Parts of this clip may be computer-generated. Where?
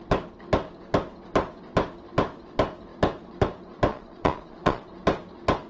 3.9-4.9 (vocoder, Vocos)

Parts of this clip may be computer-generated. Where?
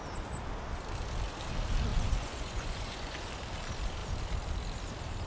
1.9-3.3 (vocoder, Vocos)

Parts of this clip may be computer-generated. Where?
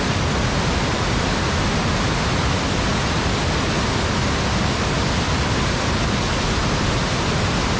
none